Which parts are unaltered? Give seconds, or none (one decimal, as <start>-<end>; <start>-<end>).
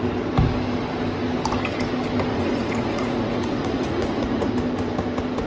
0.0-2.3; 4.5-5.5